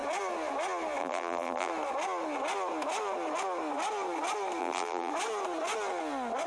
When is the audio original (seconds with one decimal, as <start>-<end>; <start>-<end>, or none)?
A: 0.0-1.0; 1.7-4.6; 5.1-6.5